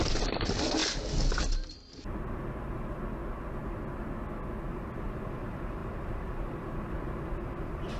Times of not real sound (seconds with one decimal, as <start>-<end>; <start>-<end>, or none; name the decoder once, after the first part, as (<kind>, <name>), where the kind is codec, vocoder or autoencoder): 0.0-0.8 (vocoder, BigVGAN v2); 4.7-8.0